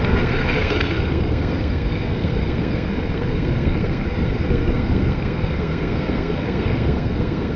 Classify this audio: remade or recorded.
remade